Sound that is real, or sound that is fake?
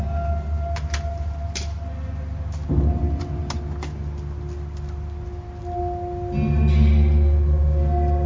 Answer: real